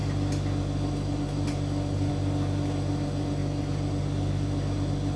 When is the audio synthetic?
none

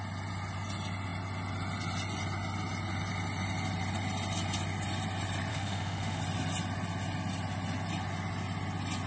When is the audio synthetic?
5.5-6.2 (autoencoder, DAC-VAE)

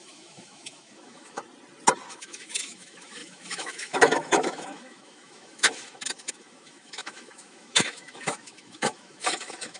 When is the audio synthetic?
0.0-1.4 (autoencoder, DAC-VAE); 2.1-9.8

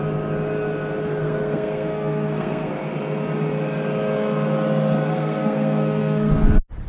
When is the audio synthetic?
1.2-2.7 (codec, SNAC); 5.1-6.3

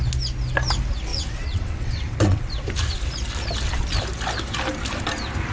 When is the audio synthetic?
1.1-2.5 (vocoder, WaveNeXt)

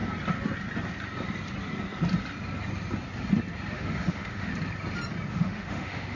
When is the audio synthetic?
3.7-4.5 (autoencoder, DAC-VAE); 5.3-6.2

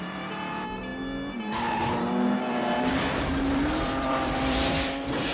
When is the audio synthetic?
0.0-0.9 (vocoder, BigVGAN v2); 2.4-5.3